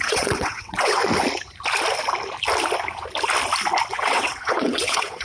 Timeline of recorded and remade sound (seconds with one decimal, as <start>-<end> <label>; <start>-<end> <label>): 0.0-1.0 remade; 1.0-3.9 recorded; 3.9-5.2 remade